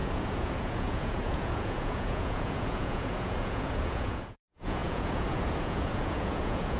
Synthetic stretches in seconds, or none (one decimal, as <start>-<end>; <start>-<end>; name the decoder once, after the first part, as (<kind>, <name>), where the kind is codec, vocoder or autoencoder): 0.0-6.8 (vocoder, Vocos)